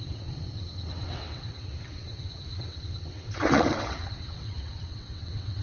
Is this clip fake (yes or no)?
yes